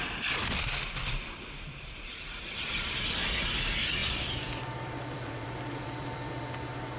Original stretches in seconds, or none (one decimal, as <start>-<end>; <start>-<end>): 0.0-1.0; 3.1-4.0; 6.3-7.0

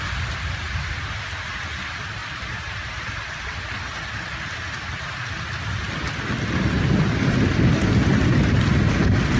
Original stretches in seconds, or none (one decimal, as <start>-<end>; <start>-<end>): 0.0-2.2; 3.7-9.4

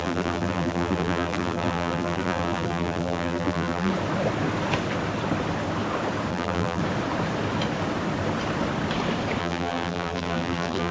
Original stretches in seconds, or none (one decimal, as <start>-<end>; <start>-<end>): 3.9-6.3; 6.8-9.4